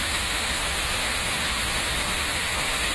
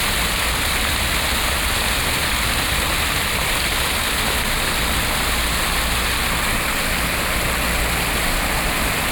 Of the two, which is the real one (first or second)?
second